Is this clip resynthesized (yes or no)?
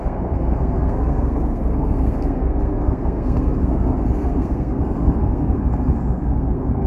yes